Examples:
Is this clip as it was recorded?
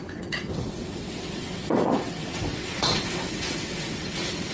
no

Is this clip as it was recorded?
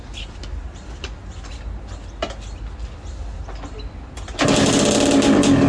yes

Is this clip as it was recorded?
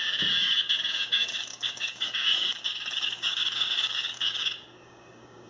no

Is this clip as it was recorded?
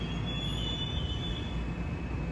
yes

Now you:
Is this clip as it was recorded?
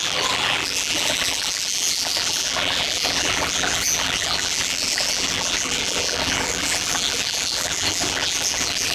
no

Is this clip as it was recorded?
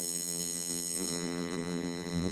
no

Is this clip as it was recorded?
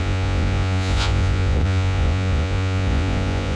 no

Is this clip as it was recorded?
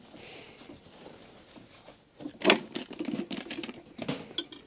yes